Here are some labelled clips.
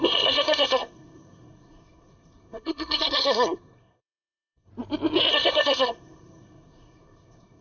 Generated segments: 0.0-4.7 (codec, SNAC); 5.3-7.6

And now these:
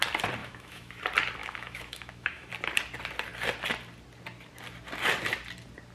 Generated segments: 0.4-1.0 (autoencoder, DAC-VAE); 1.4-2.5